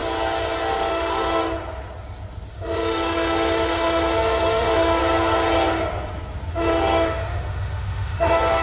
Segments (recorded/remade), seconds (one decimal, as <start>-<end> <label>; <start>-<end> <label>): 0.0-0.7 recorded; 0.7-1.4 remade; 1.4-2.5 recorded; 2.5-5.0 remade; 5.0-6.5 recorded; 6.5-8.6 remade